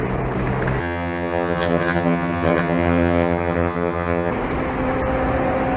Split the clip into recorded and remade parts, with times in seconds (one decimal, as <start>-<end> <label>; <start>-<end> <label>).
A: 0.0-0.8 recorded; 0.8-4.3 remade; 4.3-5.8 recorded